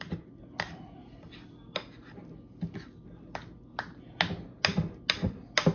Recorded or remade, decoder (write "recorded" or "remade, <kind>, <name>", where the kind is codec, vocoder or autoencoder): recorded